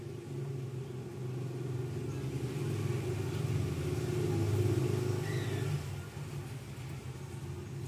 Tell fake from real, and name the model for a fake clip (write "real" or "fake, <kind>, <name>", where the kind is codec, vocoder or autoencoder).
real